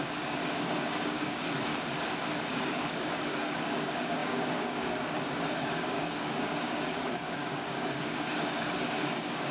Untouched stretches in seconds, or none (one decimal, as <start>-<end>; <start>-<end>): 1.7-2.5